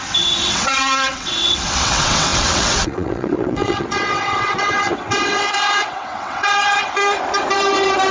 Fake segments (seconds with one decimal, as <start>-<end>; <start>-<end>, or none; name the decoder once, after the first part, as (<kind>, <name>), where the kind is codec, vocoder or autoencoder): 0.0-7.0 (vocoder, WaveNeXt)